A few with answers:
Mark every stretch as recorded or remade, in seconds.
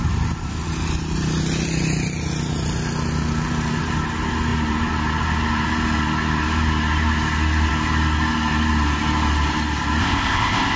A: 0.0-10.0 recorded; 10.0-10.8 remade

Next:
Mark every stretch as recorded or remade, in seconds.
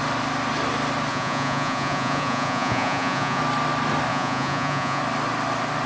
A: 0.0-1.1 recorded; 1.1-3.4 remade; 3.4-4.1 recorded; 4.1-5.0 remade; 5.0-5.9 recorded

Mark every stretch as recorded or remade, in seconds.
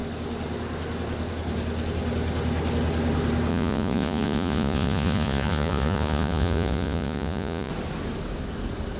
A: 0.0-3.5 recorded; 3.5-7.7 remade; 7.7-9.0 recorded